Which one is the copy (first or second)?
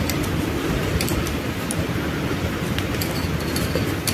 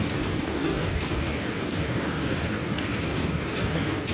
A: second